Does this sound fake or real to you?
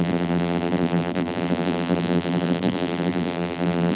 fake